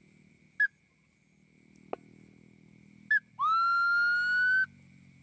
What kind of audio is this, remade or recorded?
recorded